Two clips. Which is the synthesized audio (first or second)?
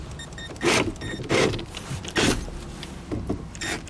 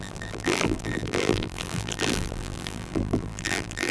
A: second